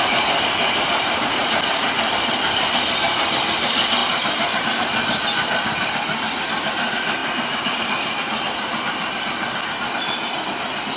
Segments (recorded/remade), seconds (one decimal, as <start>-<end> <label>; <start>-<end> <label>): 0.0-4.0 recorded; 4.0-4.6 remade; 4.6-11.0 recorded